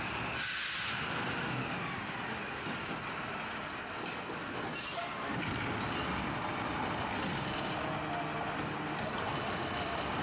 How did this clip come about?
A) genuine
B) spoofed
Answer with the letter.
A